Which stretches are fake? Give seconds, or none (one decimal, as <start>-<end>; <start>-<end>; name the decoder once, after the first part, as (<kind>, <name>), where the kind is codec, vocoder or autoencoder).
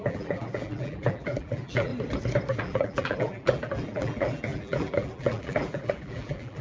0.0-1.9 (vocoder, BigVGAN v2); 2.5-6.6